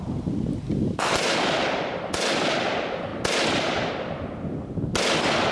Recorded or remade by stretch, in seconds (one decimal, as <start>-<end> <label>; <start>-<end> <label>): 0.0-5.5 recorded